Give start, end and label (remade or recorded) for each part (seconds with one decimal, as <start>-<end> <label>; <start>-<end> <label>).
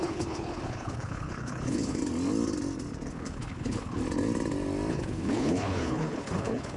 0.0-2.0 remade; 2.0-3.1 recorded; 3.1-4.0 remade; 4.0-4.9 recorded; 4.9-6.8 remade